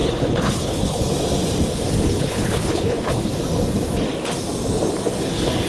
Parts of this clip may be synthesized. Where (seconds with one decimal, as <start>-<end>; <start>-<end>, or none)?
0.0-1.1; 2.1-3.3